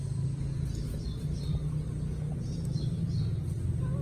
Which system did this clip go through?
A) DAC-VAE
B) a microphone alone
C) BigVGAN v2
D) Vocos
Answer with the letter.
B